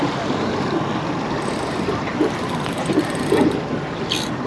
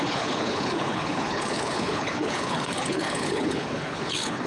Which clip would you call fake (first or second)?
second